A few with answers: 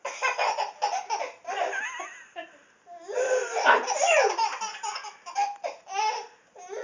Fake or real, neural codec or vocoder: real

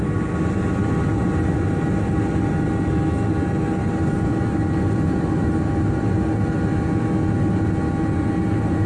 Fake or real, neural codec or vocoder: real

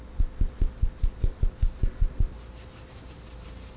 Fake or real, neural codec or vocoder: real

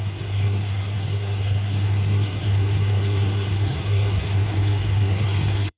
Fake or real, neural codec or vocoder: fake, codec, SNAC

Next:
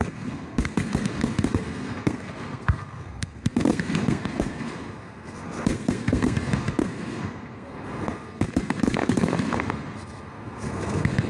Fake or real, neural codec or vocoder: fake, codec, SNAC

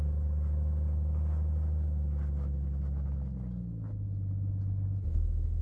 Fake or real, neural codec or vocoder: real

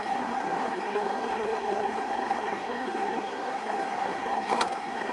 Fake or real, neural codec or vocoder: fake, codec, SNAC